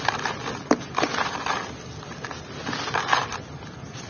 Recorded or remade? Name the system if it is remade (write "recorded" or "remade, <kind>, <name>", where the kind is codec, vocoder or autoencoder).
recorded